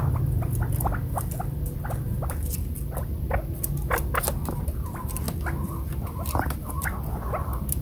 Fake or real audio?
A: real